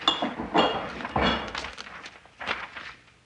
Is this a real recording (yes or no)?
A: yes